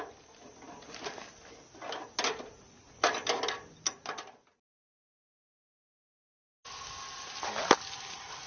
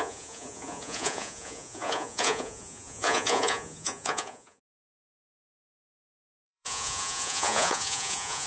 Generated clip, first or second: second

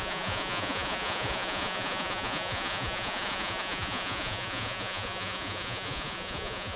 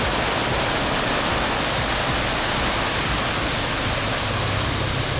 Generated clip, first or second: first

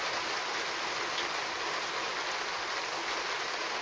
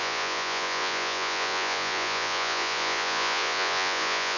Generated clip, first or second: second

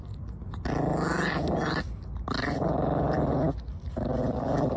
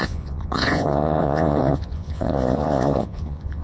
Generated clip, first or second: second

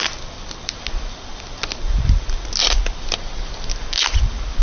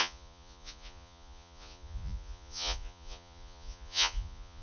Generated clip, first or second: second